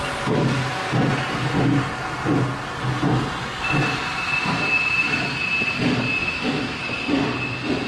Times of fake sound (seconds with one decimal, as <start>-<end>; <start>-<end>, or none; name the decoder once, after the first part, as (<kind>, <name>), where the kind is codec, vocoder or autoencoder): 6.2-6.8 (autoencoder, DAC-VAE)